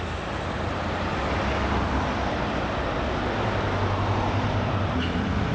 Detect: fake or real real